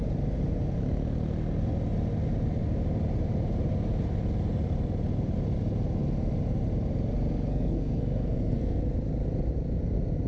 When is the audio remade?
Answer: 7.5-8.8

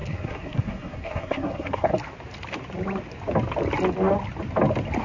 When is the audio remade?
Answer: 0.0-1.9